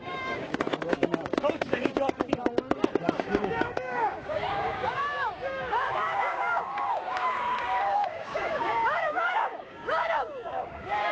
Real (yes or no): no